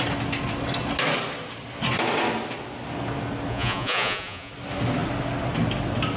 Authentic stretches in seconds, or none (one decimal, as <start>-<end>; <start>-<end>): 0.0-3.5; 4.5-6.2